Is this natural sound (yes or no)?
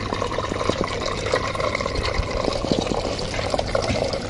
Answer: no